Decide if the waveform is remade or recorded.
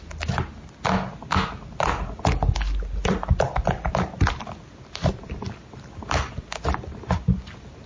recorded